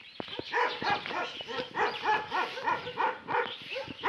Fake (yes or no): no